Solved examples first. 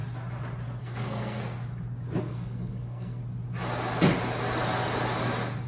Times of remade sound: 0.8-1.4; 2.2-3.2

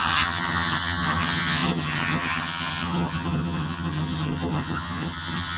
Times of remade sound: 0.0-5.6